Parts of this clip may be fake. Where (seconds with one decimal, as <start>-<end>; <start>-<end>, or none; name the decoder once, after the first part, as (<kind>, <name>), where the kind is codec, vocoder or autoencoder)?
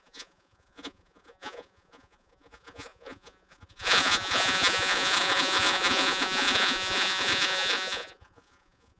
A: 0.0-9.0 (vocoder, Vocos)